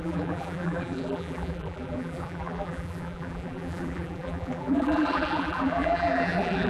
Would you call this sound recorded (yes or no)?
no